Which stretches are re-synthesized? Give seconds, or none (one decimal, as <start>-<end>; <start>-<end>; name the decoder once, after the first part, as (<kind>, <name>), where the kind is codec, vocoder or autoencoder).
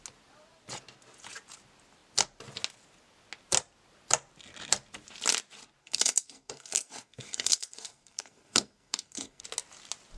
5.8-9.4 (codec, SNAC)